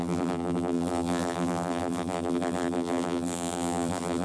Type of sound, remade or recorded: remade